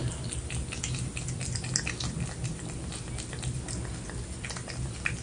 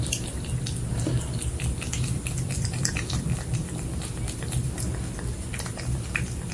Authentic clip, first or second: first